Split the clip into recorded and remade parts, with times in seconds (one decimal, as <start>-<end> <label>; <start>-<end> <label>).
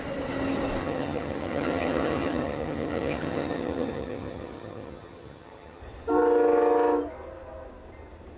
0.0-0.8 recorded; 0.8-5.8 remade; 5.8-8.4 recorded